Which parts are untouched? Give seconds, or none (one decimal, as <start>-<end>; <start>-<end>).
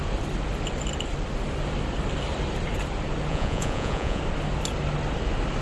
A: 0.0-3.3; 4.2-5.6